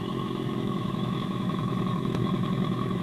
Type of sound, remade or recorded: remade